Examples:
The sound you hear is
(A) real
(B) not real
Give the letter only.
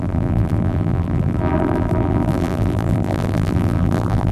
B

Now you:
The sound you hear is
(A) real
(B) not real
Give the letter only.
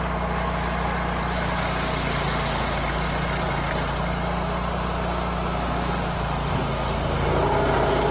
A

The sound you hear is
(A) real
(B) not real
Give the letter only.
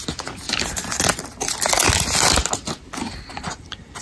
A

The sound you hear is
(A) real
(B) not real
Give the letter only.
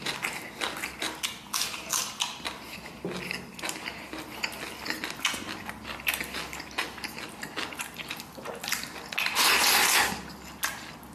A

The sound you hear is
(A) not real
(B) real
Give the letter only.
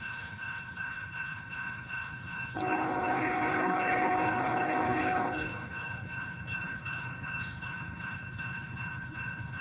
A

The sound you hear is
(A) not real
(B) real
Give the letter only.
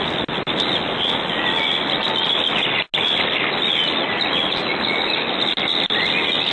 B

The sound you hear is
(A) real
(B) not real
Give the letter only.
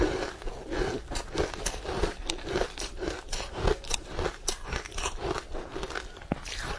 A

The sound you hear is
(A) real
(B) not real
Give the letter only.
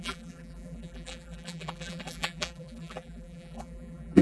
B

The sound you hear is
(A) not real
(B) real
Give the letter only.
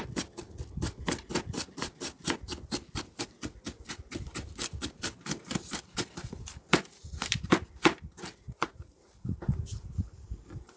A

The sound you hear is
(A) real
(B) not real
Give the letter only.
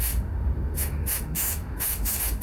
B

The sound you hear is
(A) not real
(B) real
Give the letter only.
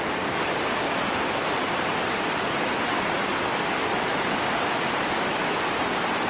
A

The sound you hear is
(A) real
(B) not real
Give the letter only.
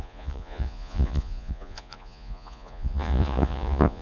B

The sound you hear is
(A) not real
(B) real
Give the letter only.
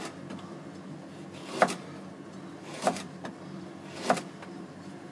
B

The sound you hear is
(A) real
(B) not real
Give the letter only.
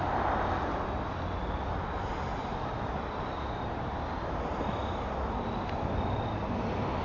A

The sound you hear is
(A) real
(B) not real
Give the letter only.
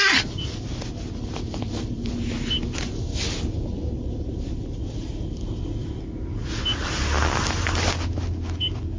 A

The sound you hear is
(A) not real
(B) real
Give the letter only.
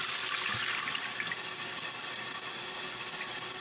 B